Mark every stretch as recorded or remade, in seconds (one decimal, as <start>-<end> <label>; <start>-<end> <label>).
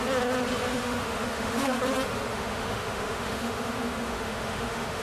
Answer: 0.0-0.7 recorded; 0.7-1.8 remade; 1.8-2.3 recorded; 2.3-5.0 remade